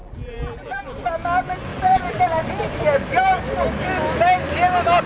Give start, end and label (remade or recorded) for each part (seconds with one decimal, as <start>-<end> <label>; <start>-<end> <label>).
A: 0.0-0.8 remade; 0.8-1.7 recorded; 1.7-2.2 remade; 2.2-5.1 recorded